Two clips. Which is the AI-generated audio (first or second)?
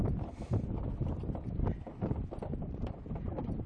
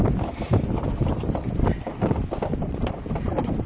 second